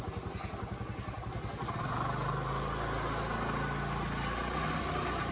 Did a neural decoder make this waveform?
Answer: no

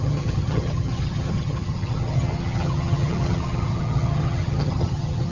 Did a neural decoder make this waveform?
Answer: yes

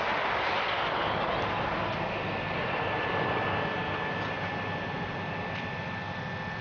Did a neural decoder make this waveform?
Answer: no